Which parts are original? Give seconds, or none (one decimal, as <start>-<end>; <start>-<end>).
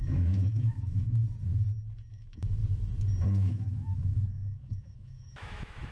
1.2-2.1; 2.6-3.2